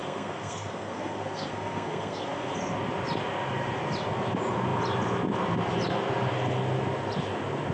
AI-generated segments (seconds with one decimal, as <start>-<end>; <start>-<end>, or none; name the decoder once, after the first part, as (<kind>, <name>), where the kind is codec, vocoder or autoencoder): 0.0-2.5 (codec, SNAC)